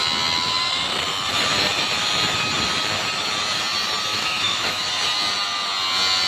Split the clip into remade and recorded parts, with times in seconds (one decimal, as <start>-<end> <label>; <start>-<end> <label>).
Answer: 0.0-4.1 recorded; 4.1-4.8 remade; 4.8-6.3 recorded